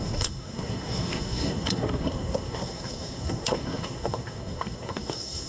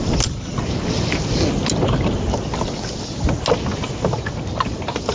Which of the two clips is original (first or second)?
second